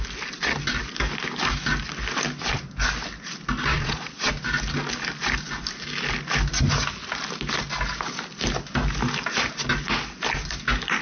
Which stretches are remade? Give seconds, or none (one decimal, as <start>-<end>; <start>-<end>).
3.7-4.3